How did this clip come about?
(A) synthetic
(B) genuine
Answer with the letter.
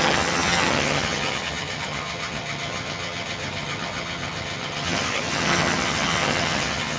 A